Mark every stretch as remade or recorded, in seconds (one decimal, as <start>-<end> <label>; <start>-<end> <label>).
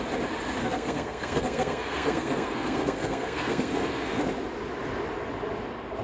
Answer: 0.0-0.6 recorded; 0.6-4.2 remade; 4.2-6.0 recorded